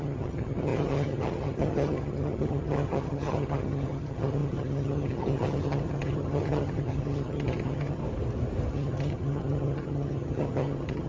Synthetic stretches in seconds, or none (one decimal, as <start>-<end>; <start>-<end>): 0.0-8.0; 8.7-11.1